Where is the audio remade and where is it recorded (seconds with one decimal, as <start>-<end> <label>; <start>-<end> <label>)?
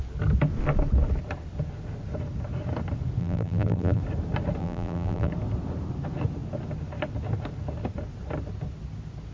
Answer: 0.0-3.2 recorded; 3.2-4.0 remade; 4.0-4.6 recorded; 4.6-5.3 remade; 5.3-9.3 recorded